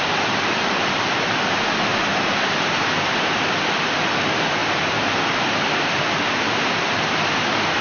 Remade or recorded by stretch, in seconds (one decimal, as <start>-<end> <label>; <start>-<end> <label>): 0.0-2.1 recorded; 2.1-3.6 remade; 3.6-4.6 recorded; 4.6-5.8 remade; 5.8-7.8 recorded